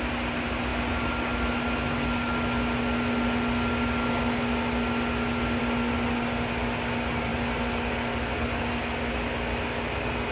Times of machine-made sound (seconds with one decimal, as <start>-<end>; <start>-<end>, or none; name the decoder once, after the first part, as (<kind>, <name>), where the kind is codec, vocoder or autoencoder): none